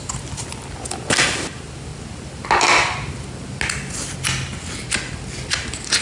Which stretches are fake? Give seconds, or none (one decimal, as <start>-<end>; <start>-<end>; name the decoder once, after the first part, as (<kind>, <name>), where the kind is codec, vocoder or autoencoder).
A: none